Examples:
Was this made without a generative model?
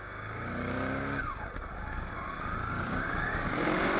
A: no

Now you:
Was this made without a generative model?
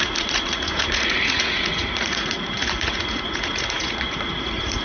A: no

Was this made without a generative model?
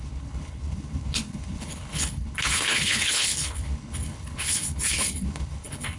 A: no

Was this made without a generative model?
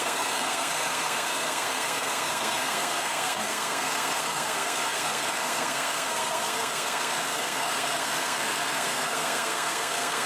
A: no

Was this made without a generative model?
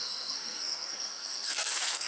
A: no